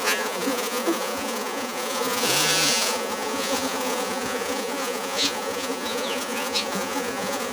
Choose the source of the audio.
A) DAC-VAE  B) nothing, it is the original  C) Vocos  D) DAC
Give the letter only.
C